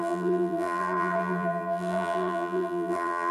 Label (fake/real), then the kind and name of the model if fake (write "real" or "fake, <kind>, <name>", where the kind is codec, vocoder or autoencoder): fake, vocoder, BigVGAN v2